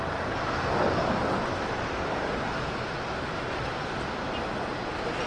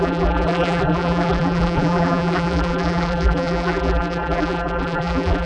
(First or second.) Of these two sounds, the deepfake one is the second